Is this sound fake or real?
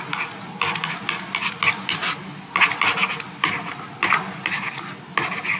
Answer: real